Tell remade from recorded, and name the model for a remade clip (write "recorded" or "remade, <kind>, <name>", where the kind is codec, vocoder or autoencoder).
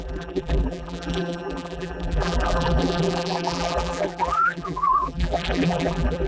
remade, vocoder, BigVGAN v2